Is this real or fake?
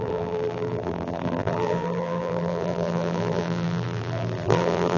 fake